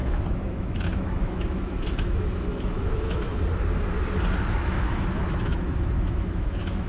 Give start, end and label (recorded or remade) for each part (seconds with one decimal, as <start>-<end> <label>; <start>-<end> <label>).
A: 0.0-3.3 remade; 3.3-4.6 recorded; 4.6-6.9 remade